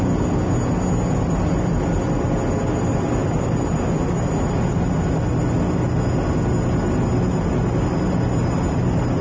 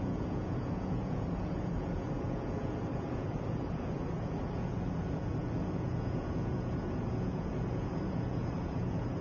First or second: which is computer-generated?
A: second